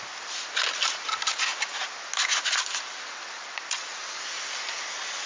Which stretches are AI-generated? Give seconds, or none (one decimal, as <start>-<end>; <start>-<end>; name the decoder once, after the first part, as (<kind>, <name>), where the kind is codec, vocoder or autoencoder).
none